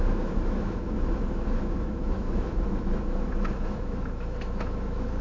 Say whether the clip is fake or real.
fake